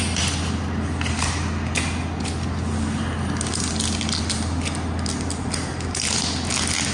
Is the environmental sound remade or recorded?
recorded